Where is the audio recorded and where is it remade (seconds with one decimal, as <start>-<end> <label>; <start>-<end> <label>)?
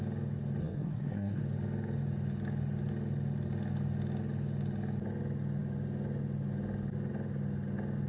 0.0-0.6 recorded; 0.6-1.4 remade; 1.4-8.1 recorded